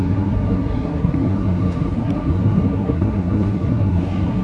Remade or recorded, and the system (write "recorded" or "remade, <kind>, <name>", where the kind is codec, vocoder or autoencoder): remade, codec, SNAC